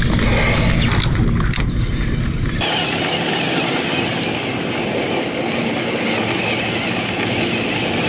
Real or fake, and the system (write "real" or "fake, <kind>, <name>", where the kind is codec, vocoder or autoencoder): real